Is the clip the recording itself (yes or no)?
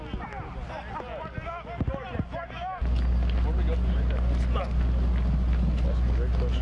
yes